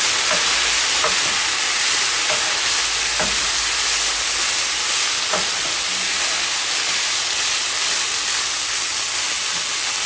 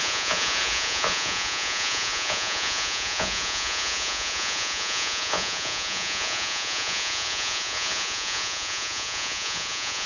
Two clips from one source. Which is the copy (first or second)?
second